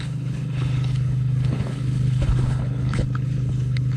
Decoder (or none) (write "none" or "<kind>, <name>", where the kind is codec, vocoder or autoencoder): codec, HILCodec